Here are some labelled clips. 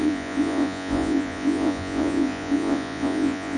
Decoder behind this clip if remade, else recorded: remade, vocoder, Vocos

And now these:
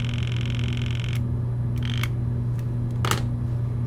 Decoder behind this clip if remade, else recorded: recorded